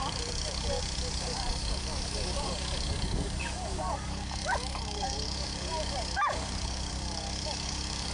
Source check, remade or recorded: remade